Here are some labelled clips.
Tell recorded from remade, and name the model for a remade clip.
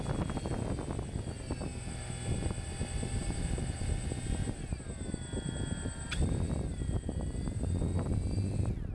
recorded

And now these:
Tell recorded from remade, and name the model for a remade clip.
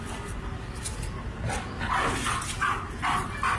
recorded